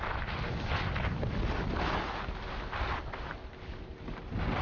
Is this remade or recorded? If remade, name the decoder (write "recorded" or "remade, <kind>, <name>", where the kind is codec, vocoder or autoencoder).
recorded